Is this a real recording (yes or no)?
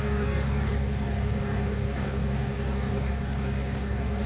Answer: no